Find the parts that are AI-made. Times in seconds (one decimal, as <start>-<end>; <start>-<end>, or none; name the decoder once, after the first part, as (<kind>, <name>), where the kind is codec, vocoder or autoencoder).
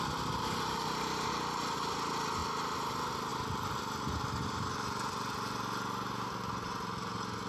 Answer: none